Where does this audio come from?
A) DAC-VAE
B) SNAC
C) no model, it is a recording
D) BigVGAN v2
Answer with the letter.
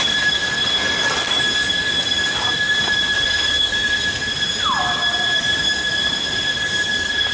D